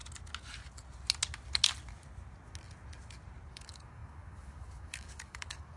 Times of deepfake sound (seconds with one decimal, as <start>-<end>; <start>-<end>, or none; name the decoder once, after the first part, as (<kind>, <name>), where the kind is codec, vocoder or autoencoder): 3.5-5.8 (codec, DAC)